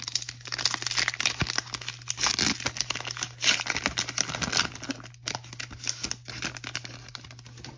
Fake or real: real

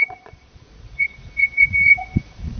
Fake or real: fake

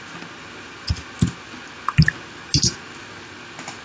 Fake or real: real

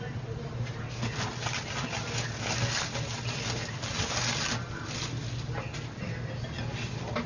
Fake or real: real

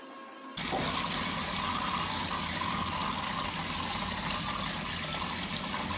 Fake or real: real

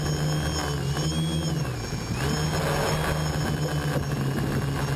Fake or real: real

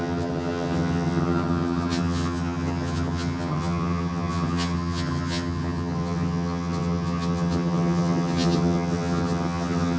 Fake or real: fake